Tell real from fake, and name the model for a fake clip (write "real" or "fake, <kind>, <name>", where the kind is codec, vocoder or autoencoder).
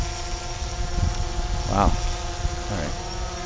real